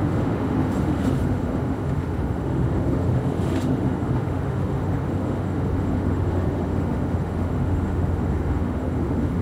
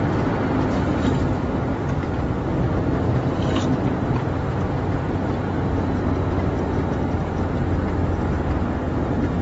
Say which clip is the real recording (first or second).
second